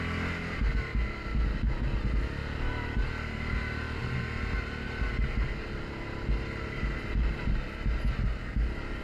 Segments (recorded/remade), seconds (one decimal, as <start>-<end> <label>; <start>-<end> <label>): 0.0-9.0 recorded